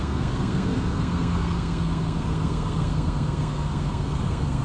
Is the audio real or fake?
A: fake